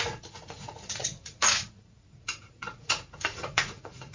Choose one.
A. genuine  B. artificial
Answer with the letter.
B